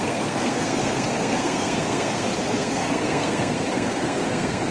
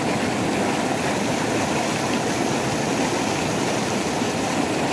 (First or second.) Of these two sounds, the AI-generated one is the first